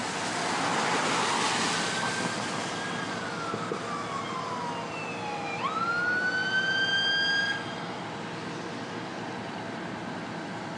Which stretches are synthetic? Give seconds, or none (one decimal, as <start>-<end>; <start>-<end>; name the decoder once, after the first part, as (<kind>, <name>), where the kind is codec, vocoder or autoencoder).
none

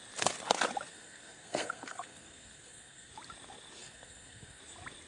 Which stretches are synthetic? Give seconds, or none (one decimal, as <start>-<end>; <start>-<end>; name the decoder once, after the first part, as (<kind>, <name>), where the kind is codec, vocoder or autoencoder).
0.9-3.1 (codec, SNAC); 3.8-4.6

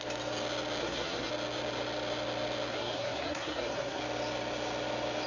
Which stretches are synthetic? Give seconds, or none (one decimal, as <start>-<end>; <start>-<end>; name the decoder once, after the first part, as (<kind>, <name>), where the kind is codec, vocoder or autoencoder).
0.8-1.3 (codec, SNAC); 2.7-4.0

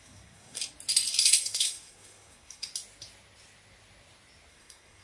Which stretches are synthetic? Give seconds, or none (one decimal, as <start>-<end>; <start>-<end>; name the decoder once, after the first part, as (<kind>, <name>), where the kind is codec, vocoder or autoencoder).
0.0-0.6 (codec, SNAC); 1.2-2.7; 4.5-5.0

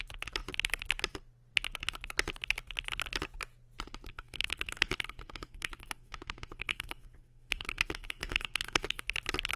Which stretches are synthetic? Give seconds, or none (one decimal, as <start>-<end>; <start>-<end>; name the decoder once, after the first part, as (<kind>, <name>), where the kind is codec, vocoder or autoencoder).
4.1-9.0 (codec, SNAC)

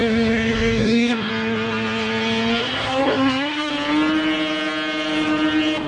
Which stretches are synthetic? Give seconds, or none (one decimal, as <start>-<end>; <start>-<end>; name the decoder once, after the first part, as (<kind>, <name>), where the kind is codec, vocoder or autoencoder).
0.0-1.3 (codec, SNAC); 2.6-3.7

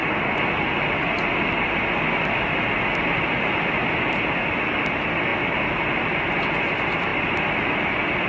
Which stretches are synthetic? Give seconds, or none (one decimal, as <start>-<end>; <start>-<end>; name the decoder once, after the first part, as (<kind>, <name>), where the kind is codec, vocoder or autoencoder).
none

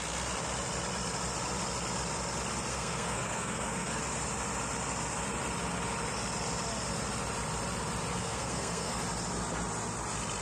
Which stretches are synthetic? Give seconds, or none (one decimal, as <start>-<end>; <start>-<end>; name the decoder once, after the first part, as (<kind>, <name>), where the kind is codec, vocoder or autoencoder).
2.7-4.0 (codec, SNAC); 8.2-9.0